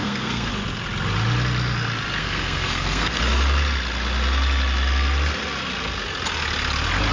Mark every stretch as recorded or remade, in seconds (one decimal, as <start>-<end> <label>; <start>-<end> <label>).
0.0-0.5 remade; 0.5-2.2 recorded; 2.2-3.2 remade; 3.2-7.1 recorded